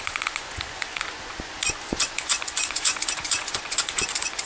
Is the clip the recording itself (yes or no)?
no